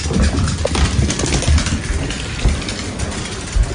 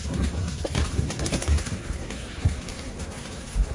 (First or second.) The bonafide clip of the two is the first